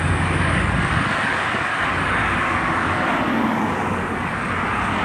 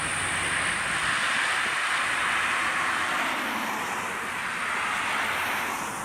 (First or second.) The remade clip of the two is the first